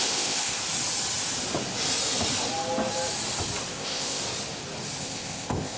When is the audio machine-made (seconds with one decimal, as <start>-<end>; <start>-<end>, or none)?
0.0-0.6; 3.7-4.2; 5.0-5.8